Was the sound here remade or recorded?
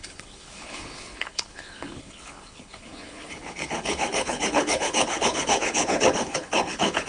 remade